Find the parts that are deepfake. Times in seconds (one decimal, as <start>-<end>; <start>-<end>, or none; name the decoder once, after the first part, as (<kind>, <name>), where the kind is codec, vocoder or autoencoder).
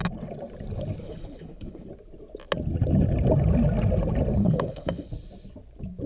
1.0-1.9 (codec, HILCodec); 4.4-5.1